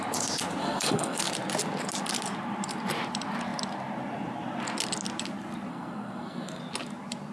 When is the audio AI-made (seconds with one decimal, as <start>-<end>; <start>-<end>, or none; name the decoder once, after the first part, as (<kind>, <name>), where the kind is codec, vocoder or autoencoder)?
0.6-1.2 (codec, SNAC); 5.7-6.6